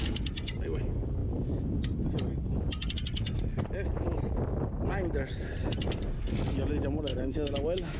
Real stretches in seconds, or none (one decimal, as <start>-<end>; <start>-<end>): 0.0-7.1